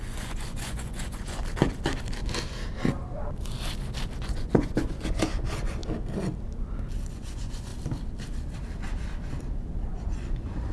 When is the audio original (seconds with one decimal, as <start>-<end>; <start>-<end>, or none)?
1.4-4.2; 5.8-7.1; 7.7-10.0